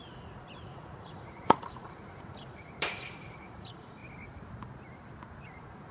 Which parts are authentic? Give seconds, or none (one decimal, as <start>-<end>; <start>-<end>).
4.0-5.4

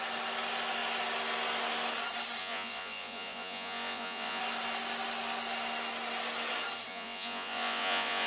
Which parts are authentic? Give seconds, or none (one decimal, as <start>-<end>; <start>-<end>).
0.0-2.4; 4.4-6.9

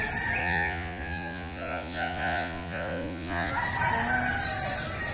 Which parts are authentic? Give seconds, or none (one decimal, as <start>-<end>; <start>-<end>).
0.0-0.4; 3.5-5.1

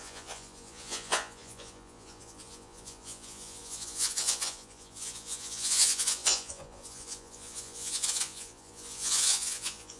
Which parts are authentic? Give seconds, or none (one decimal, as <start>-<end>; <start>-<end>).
none

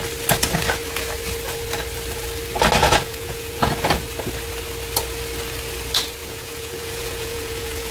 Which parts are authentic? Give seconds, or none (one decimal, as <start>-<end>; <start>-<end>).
0.0-2.8; 3.7-6.2

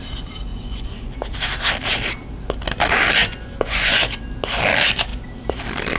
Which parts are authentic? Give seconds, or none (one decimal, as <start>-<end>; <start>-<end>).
0.0-0.5; 1.1-3.2; 4.0-6.0